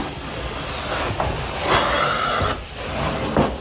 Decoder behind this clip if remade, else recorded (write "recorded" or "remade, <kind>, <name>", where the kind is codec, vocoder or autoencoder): recorded